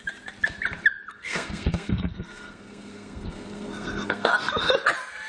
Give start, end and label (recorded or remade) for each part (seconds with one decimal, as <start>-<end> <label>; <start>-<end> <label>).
0.0-1.1 recorded; 1.1-4.3 remade; 4.3-5.3 recorded